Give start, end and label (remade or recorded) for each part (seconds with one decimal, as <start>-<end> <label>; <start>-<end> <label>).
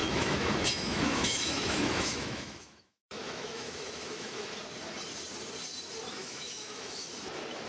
0.0-4.6 remade; 4.6-6.2 recorded; 6.2-7.1 remade; 7.1-7.7 recorded